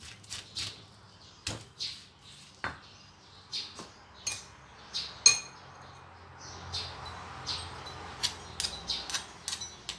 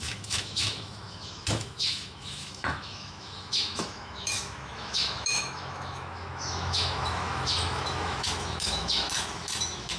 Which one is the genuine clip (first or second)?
first